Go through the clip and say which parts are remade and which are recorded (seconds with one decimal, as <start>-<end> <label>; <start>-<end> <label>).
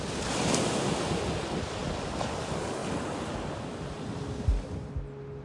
0.0-5.4 recorded